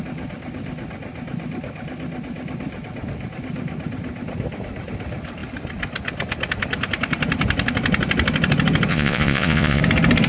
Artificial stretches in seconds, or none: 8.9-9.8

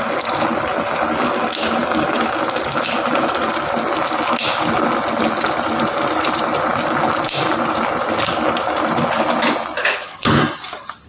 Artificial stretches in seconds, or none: 9.8-10.4

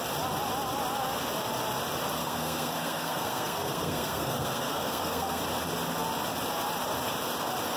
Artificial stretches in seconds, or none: 2.2-5.4

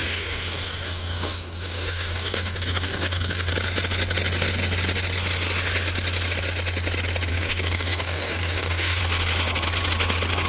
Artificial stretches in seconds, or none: 0.0-3.5; 7.3-9.0

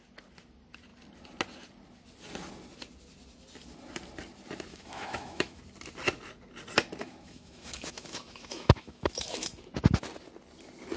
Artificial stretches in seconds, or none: 4.7-5.6; 7.0-9.5